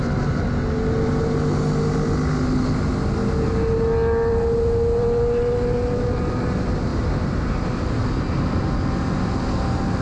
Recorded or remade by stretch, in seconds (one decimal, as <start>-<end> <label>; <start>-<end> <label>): 0.0-10.0 recorded